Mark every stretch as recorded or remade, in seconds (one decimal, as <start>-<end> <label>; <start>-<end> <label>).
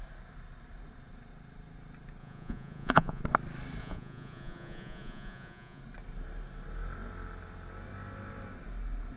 0.0-2.2 recorded; 2.2-3.2 remade; 3.2-3.8 recorded; 3.8-5.8 remade; 5.8-9.2 recorded